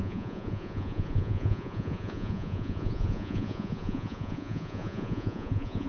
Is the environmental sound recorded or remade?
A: remade